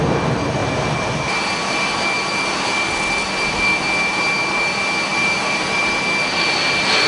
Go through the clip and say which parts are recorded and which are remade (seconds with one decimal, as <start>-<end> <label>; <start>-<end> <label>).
0.0-0.6 recorded; 0.6-1.5 remade; 1.5-5.1 recorded; 5.1-5.8 remade; 5.8-7.1 recorded